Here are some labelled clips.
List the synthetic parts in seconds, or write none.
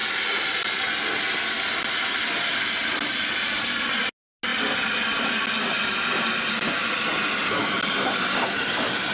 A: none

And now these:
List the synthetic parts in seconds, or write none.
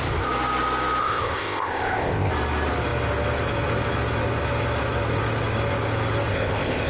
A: 1.0-2.3 (codec, ZipCodec); 6.3-6.9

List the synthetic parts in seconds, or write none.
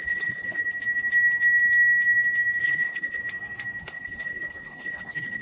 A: 0.0-0.6 (codec, HILCodec); 2.6-3.2; 3.8-5.4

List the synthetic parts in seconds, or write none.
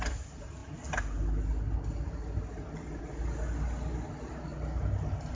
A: none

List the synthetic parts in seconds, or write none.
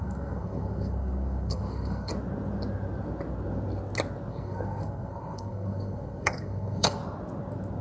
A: 0.0-2.1 (codec, SNAC); 4.3-7.0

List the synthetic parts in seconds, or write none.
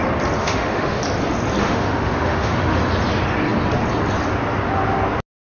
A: 0.4-1.0 (autoencoder, DAC-VAE); 1.6-2.8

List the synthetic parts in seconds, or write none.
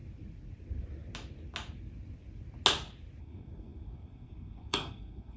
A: 3.2-5.4 (codec, SNAC)